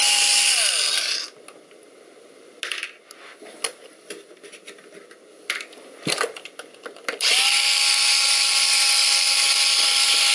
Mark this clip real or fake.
real